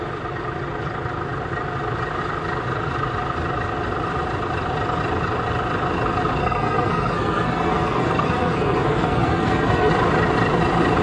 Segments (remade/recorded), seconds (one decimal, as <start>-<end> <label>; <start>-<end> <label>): 0.0-6.4 recorded; 6.4-9.9 remade; 9.9-11.0 recorded